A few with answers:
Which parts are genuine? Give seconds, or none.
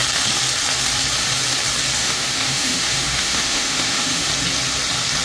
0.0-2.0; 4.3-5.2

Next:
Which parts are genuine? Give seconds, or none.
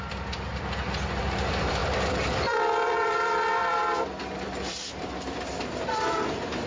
0.5-1.2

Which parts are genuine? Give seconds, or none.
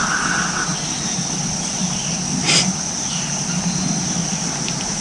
0.0-5.0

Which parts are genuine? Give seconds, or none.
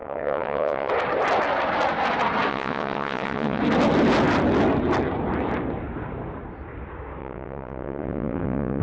0.9-2.5; 3.6-7.2